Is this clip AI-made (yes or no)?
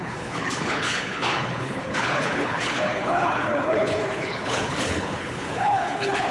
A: yes